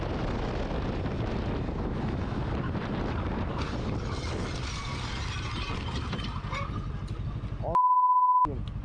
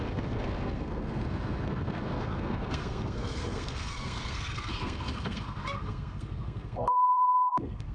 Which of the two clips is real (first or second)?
first